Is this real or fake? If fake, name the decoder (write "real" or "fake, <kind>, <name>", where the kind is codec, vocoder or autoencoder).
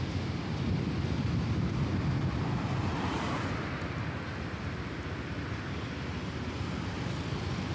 real